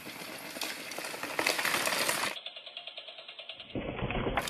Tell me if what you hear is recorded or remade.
recorded